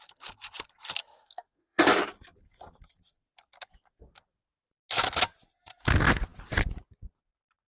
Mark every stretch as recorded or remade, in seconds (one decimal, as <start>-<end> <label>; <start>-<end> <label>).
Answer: 0.0-1.1 recorded; 1.1-1.8 remade; 1.8-7.7 recorded